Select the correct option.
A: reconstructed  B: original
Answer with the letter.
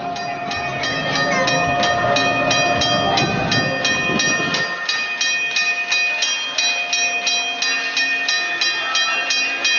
B